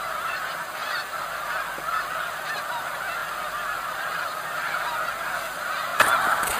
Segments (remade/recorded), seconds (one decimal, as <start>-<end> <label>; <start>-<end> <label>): 0.0-6.6 recorded